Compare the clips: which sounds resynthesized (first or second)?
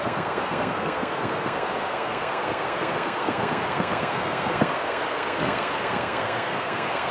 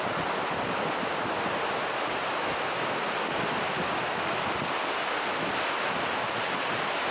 first